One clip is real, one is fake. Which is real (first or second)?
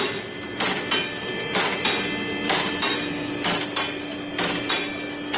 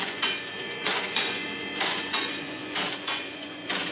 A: first